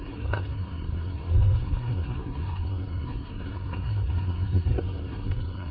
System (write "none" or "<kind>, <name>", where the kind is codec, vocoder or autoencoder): codec, SNAC